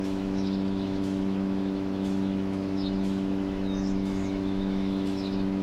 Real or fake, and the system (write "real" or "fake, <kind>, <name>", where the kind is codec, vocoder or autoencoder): fake, autoencoder, DAC-VAE